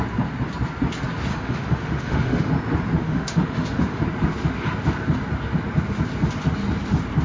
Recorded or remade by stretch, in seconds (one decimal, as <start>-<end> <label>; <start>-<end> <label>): 0.0-1.3 recorded; 1.3-2.5 remade; 2.5-3.0 recorded; 3.0-4.0 remade; 4.0-7.2 recorded